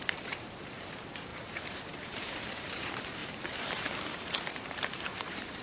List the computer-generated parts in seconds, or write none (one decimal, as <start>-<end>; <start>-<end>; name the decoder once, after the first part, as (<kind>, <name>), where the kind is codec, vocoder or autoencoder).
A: 0.0-5.6 (vocoder, BigVGAN v2)